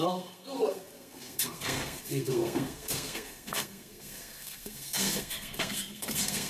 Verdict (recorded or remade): remade